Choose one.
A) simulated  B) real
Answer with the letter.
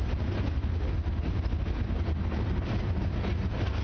B